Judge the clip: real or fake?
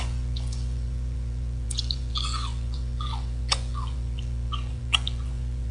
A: fake